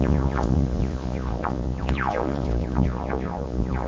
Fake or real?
fake